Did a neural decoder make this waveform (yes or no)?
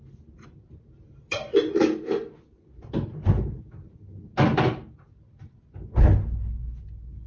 no